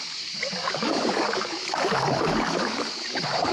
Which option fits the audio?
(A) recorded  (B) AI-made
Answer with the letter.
B